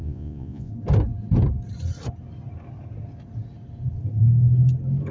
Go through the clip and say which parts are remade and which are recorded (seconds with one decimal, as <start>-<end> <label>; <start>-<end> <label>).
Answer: 0.0-0.7 remade; 0.7-5.1 recorded